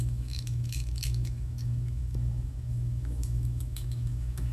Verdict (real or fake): fake